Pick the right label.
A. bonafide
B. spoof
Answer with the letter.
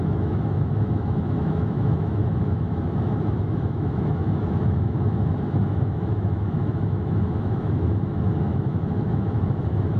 B